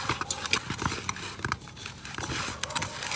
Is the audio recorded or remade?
recorded